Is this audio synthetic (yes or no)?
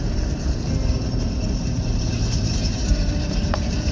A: yes